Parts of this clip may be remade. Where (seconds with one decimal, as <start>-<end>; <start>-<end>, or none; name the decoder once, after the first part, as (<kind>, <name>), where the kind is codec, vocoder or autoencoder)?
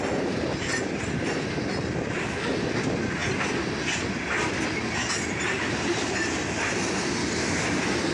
none